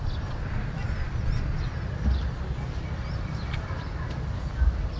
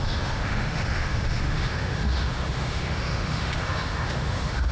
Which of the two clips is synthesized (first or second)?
second